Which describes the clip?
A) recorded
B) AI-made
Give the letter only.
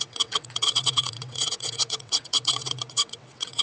B